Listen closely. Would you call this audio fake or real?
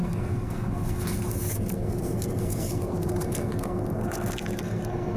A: fake